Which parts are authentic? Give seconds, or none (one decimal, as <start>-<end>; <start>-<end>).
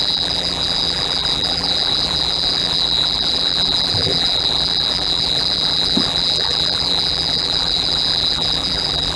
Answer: none